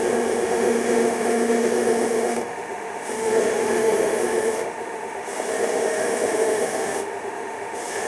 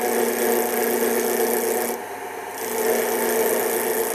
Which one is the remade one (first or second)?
first